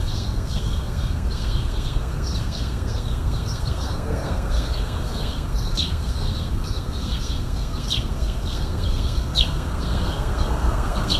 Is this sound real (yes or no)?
no